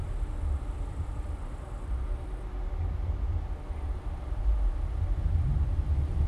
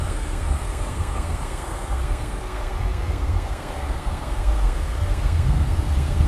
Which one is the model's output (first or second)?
second